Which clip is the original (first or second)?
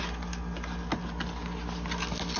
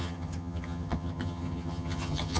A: first